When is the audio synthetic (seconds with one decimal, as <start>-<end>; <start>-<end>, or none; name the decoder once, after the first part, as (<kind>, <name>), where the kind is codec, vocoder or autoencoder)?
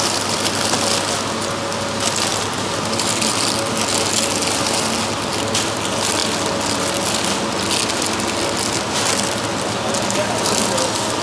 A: none